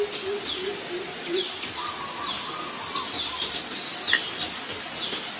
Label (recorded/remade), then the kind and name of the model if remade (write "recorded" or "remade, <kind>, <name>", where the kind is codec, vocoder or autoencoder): recorded